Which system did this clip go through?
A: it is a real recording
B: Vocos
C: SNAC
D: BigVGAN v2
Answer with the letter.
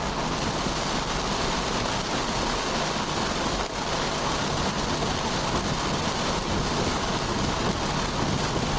A